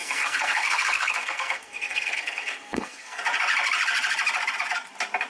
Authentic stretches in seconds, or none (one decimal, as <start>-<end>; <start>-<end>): 3.2-5.3